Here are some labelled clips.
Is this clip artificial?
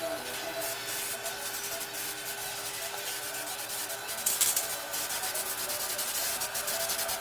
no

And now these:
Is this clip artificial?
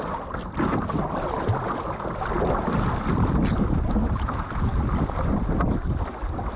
no